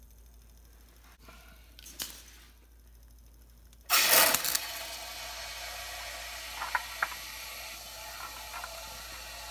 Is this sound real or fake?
real